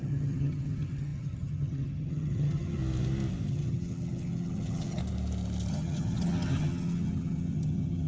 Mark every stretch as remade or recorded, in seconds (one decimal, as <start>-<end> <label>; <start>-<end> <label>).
0.0-2.8 remade; 2.8-3.5 recorded; 3.5-5.0 remade; 5.0-5.7 recorded; 5.7-8.1 remade